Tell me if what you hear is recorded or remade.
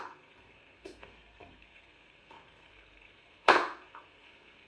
remade